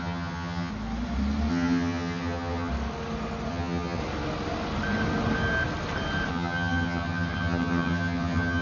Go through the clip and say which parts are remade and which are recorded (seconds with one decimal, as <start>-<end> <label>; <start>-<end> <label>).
0.0-0.7 remade; 0.7-1.5 recorded; 1.5-2.7 remade; 2.7-3.5 recorded; 3.5-4.0 remade; 4.0-6.3 recorded; 6.3-8.6 remade